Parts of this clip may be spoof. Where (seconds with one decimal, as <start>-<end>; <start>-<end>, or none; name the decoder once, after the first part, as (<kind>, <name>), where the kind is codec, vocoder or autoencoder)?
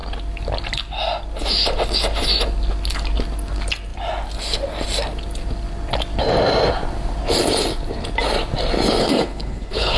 9.0-10.0 (codec, HILCodec)